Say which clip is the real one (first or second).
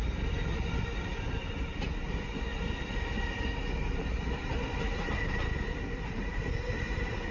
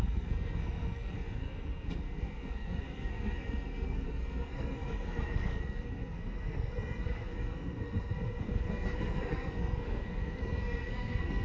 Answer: first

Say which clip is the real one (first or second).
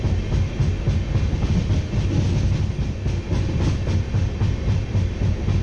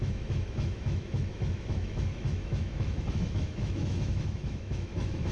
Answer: first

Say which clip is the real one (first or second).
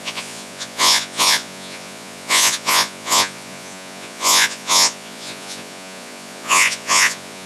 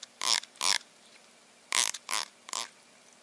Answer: second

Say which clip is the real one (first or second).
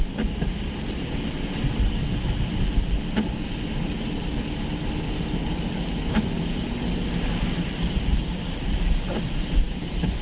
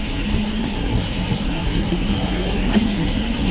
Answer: first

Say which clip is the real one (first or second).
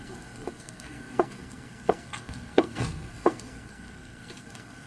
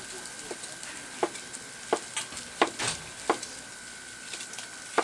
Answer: second